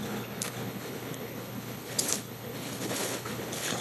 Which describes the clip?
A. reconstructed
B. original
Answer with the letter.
A